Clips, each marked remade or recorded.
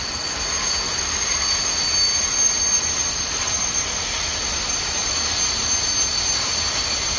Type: recorded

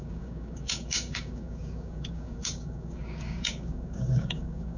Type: remade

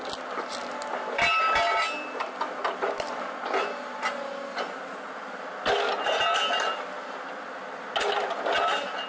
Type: recorded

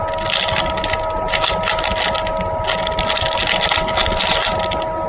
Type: recorded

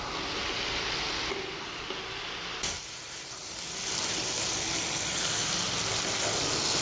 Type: recorded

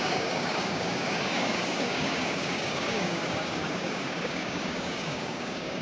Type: remade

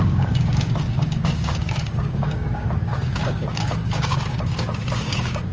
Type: remade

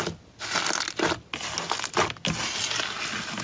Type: recorded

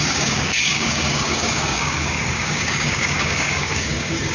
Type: remade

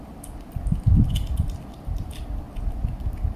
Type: recorded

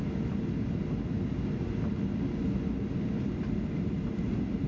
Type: recorded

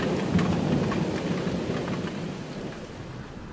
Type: recorded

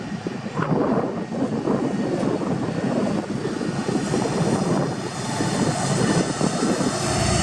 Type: recorded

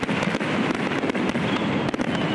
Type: recorded